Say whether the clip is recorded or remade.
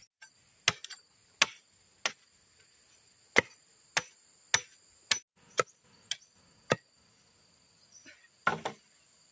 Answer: recorded